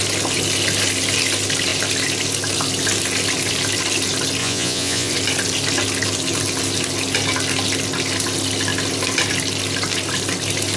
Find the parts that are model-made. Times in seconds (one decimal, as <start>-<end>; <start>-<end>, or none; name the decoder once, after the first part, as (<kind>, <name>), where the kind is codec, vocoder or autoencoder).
4.4-5.1 (vocoder, Vocos)